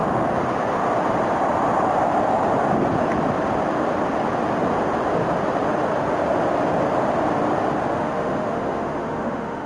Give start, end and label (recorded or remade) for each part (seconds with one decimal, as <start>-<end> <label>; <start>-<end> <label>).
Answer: 0.0-7.9 recorded; 7.9-9.7 remade